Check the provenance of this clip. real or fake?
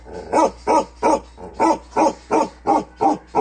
real